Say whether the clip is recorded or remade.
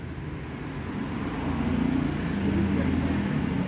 recorded